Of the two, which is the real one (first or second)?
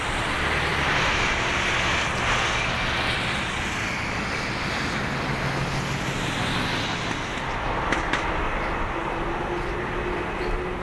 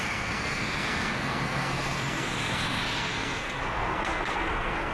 first